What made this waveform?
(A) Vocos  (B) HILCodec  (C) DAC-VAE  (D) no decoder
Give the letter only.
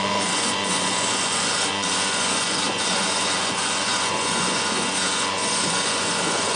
A